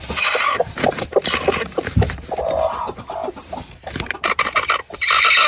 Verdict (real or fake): fake